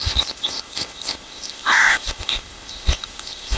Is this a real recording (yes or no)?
no